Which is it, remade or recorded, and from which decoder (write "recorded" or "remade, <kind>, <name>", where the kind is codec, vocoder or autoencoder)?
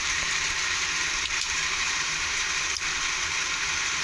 remade, vocoder, BigVGAN v2